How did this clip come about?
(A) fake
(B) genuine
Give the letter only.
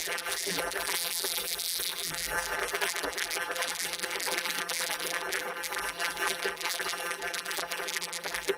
A